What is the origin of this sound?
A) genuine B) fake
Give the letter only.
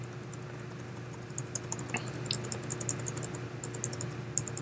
A